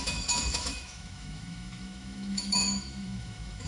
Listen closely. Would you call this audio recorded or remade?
remade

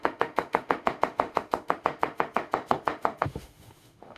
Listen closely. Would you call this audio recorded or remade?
remade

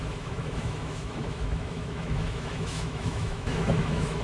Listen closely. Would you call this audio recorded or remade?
remade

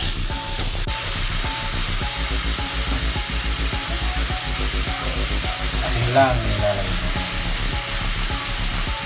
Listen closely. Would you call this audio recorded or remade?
recorded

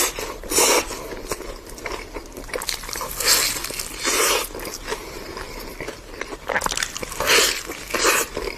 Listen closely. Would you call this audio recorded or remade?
recorded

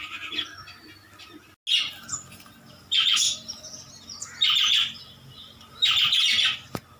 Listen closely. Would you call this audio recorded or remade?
recorded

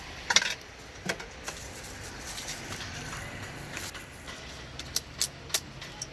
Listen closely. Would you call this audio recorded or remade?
recorded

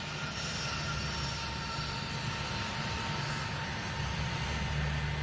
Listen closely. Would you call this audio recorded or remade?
recorded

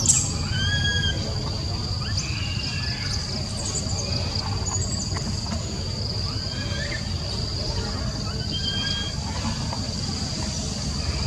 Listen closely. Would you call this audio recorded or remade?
recorded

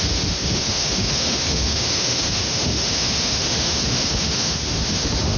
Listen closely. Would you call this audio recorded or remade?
remade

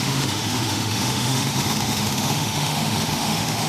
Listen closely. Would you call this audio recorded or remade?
remade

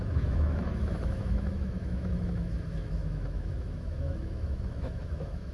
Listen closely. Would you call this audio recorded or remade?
remade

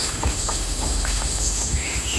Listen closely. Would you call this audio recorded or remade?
remade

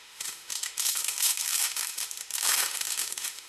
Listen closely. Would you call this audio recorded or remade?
remade